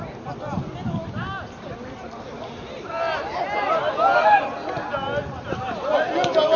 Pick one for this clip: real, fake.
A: real